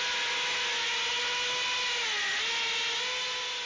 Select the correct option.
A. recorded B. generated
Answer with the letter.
A